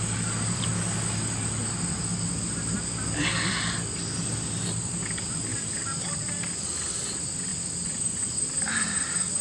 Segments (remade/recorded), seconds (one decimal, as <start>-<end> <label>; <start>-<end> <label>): 0.0-0.7 remade; 0.7-4.2 recorded; 4.2-5.5 remade; 5.5-6.5 recorded; 6.5-9.4 remade